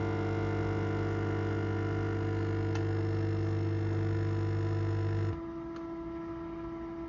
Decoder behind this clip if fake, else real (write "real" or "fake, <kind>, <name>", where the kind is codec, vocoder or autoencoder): real